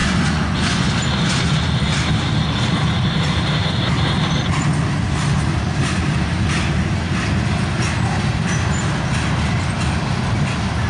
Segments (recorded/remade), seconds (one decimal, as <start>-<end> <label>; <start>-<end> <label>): 0.0-0.9 remade; 0.9-10.9 recorded